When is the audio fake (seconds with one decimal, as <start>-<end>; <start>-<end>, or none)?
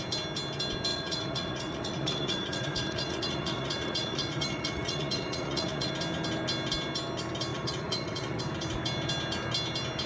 0.9-5.9; 7.5-8.4